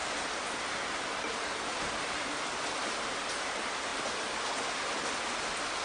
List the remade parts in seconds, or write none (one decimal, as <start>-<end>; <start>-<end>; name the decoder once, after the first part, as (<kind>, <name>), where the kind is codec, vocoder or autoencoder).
0.0-0.6 (vocoder, BigVGAN v2)